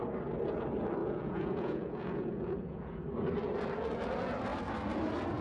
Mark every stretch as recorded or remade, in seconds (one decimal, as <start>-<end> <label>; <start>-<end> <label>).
0.0-1.0 recorded; 1.0-2.9 remade; 2.9-5.4 recorded